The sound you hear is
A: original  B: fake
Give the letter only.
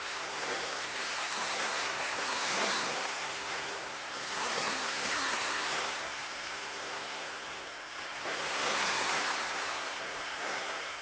B